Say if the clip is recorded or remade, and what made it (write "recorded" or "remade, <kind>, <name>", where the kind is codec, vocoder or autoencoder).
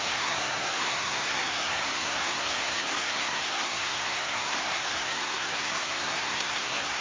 remade, codec, SNAC